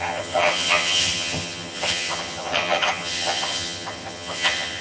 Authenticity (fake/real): fake